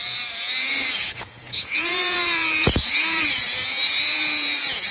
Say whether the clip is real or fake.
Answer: fake